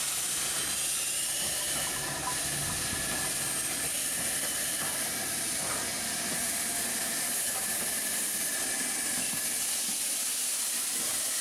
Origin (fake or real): real